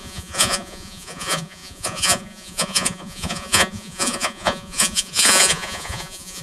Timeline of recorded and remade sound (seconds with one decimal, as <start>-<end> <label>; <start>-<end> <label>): 0.0-6.4 remade